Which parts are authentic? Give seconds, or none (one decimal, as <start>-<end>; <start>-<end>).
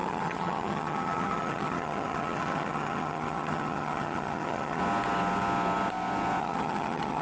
4.8-6.4